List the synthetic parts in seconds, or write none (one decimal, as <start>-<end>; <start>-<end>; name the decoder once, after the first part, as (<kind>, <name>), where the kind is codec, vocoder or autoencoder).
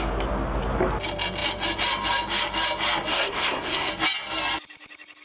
3.1-3.9 (codec, SNAC)